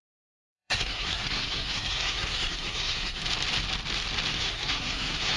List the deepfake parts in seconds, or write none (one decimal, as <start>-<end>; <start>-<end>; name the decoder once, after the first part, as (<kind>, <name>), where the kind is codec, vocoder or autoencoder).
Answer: 0.0-3.2 (codec, SNAC); 4.3-5.4